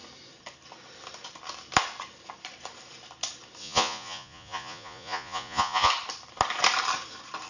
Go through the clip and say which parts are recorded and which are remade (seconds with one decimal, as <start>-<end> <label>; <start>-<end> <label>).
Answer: 0.0-3.6 recorded; 3.6-5.9 remade; 5.9-7.5 recorded